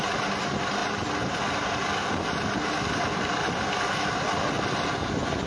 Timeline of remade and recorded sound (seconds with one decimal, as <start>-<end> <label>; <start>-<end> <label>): 0.0-5.5 recorded